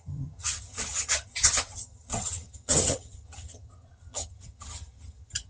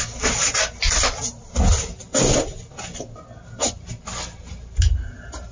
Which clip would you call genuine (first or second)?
second